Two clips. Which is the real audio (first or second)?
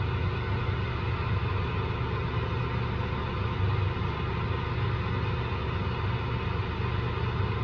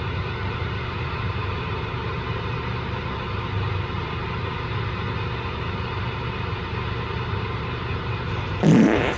first